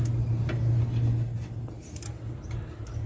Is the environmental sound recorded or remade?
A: recorded